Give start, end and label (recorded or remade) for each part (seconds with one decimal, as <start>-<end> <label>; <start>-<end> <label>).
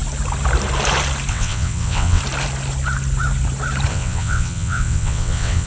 0.0-1.3 recorded; 1.3-2.2 remade; 2.2-3.9 recorded; 3.9-5.7 remade